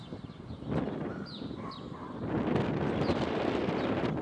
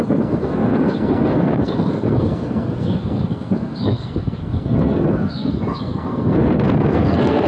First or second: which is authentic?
first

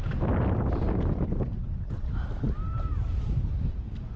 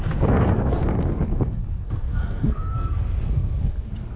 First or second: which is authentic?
first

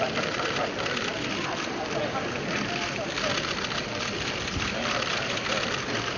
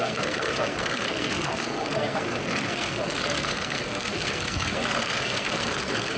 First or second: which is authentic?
first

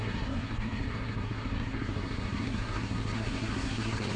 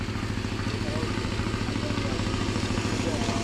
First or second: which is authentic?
second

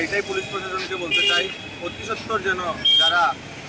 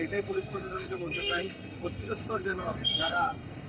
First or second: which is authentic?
first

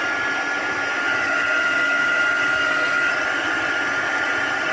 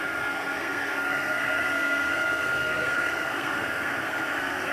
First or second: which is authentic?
first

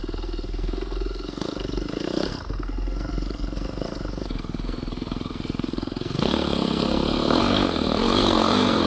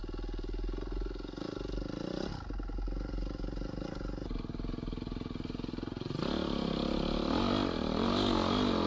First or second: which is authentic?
second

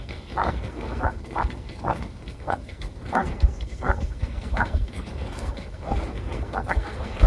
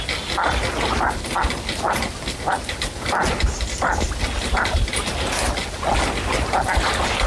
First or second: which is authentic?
second